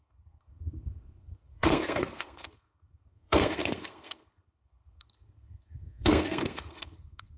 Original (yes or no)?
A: no